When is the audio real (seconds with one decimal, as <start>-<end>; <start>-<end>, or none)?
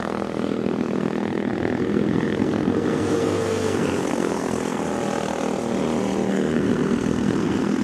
4.8-6.3